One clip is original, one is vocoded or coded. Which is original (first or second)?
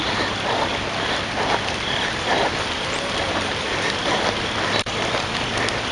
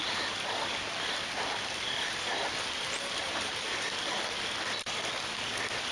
second